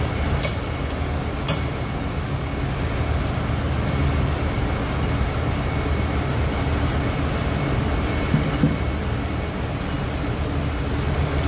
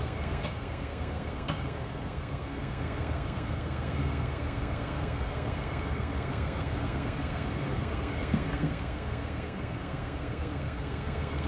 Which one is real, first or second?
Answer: first